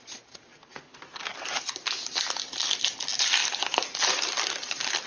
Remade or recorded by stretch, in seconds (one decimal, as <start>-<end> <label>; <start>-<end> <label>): 0.0-5.1 recorded